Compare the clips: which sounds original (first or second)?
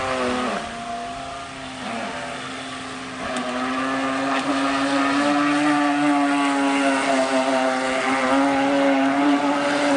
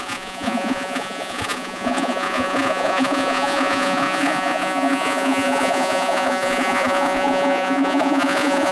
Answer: first